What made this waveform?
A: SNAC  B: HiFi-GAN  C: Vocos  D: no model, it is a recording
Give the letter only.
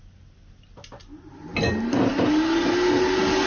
D